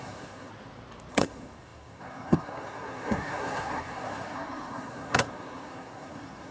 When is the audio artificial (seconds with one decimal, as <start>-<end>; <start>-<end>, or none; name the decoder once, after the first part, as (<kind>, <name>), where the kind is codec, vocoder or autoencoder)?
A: 0.0-0.5 (codec, SNAC); 1.1-6.5